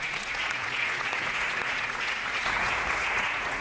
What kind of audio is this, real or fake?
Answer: fake